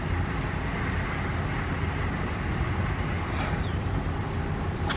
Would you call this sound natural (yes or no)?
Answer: yes